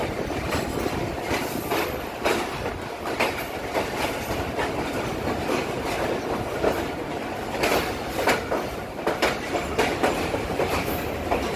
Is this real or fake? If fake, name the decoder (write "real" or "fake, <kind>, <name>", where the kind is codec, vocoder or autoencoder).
real